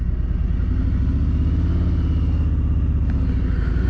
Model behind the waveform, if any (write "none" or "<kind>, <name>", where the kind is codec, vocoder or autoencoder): none